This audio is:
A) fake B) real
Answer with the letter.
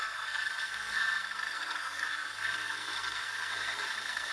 A